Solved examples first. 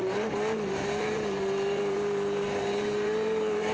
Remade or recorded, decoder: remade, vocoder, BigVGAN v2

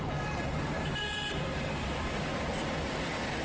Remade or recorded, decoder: remade, vocoder, BigVGAN v2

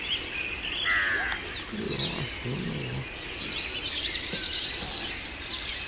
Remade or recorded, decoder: recorded